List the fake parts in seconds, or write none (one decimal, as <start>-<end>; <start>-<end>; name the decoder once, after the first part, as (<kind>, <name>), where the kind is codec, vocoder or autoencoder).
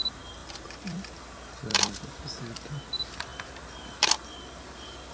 0.4-1.2 (vocoder, BigVGAN v2); 1.7-2.2